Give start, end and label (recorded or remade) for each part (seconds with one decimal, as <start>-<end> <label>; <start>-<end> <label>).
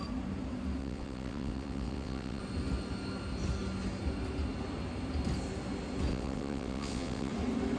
0.0-0.8 recorded; 0.8-2.4 remade; 2.4-6.1 recorded; 6.1-7.3 remade; 7.3-7.8 recorded